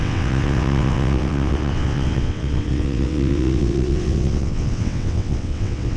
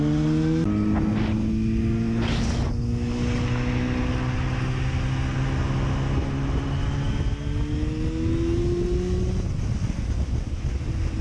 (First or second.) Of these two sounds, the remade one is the first